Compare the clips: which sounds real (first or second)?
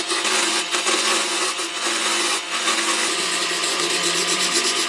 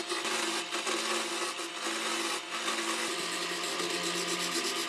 second